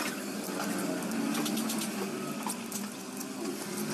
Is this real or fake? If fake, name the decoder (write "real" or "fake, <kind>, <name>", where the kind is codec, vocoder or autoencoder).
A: real